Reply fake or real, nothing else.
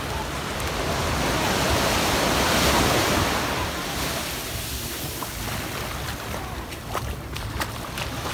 real